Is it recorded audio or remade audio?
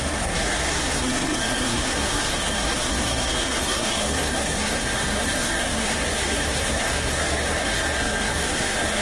remade